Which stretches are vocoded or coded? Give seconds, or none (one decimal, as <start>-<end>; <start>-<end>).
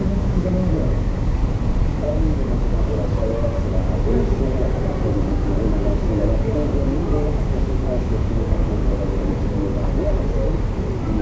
0.0-1.4; 2.1-3.0; 5.3-8.8